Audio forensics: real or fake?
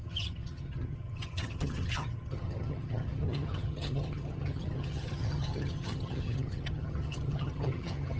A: fake